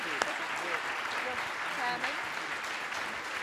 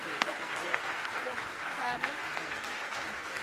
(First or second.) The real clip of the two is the first